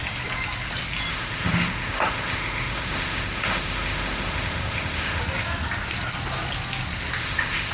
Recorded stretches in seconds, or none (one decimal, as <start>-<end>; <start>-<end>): 0.0-1.1; 5.2-7.2